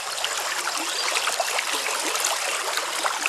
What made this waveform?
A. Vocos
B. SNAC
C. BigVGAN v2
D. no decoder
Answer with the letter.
D